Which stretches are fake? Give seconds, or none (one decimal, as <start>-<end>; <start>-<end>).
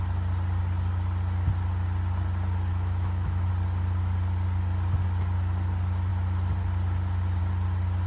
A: 2.7-3.5